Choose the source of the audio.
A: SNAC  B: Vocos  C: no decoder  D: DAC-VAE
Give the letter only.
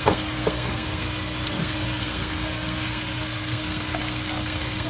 A